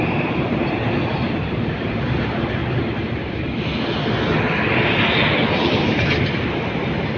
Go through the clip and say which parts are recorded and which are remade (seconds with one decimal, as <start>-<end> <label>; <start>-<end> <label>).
0.0-2.6 remade; 2.6-7.2 recorded